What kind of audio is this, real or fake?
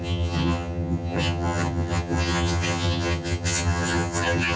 fake